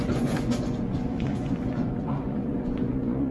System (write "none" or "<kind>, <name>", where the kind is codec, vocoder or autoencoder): vocoder, Vocos